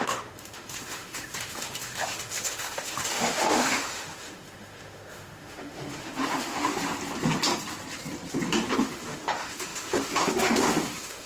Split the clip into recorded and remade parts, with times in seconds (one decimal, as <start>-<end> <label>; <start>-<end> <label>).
0.0-6.9 remade; 6.9-8.8 recorded; 8.8-11.3 remade